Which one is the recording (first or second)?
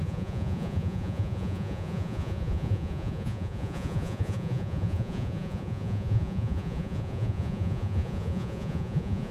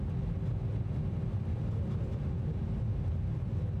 second